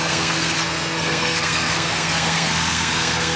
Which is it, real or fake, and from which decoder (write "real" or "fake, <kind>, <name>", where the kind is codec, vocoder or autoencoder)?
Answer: fake, codec, SNAC